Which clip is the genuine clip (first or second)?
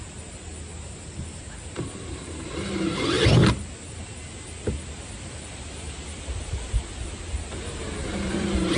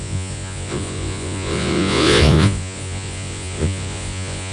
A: first